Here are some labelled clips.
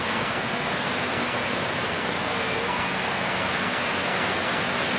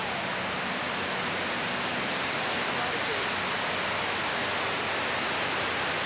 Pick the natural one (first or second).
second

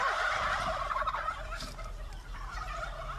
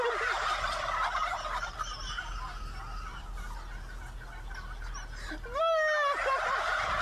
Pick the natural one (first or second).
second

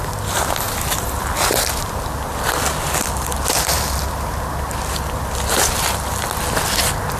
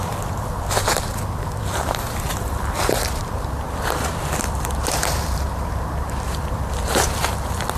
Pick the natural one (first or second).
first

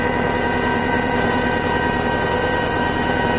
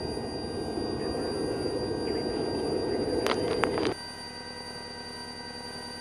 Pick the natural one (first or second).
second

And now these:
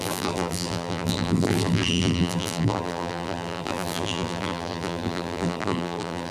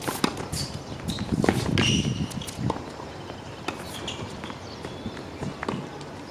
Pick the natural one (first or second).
second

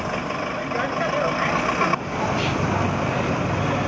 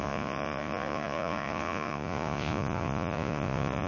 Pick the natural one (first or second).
first